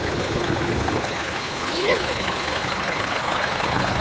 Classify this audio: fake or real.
fake